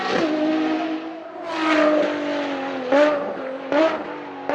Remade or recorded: recorded